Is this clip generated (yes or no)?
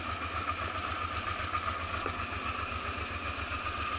no